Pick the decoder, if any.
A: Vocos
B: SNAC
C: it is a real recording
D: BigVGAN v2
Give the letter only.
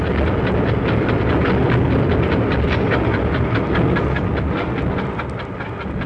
C